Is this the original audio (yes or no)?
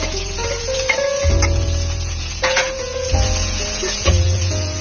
no